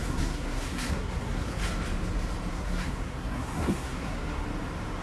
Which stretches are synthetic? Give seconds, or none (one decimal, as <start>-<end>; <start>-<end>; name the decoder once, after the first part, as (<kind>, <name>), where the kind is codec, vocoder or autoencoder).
0.0-1.6 (codec, SNAC); 2.5-4.4